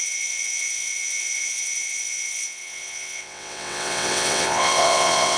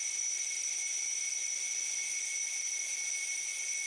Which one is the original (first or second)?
second